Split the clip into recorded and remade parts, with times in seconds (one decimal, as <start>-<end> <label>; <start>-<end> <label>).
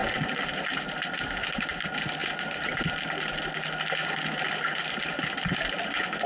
0.0-6.3 recorded